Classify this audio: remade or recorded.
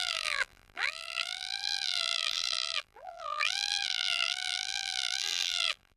remade